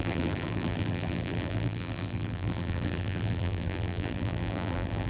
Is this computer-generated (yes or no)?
yes